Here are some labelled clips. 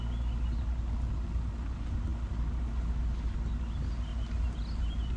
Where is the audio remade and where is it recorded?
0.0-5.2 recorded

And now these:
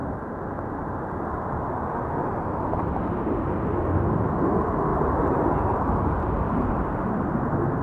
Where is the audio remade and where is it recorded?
0.0-4.9 recorded; 4.9-6.7 remade; 6.7-7.8 recorded

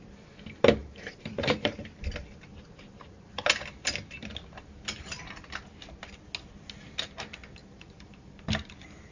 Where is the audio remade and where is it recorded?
0.0-0.8 recorded; 0.8-2.1 remade; 2.1-7.6 recorded; 7.6-8.2 remade; 8.2-9.1 recorded

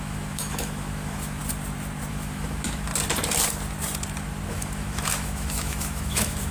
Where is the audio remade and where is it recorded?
0.0-1.4 remade; 1.4-2.1 recorded; 2.1-2.9 remade; 2.9-4.5 recorded; 4.5-6.5 remade